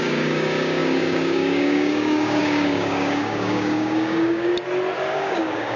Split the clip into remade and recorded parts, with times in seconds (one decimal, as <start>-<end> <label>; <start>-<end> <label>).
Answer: 0.0-4.5 remade; 4.5-5.1 recorded; 5.1-5.8 remade